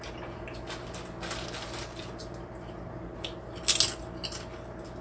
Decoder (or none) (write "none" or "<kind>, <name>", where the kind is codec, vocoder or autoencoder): none